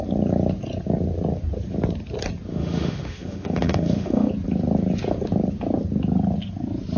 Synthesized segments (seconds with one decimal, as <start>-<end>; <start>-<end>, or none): 2.5-4.3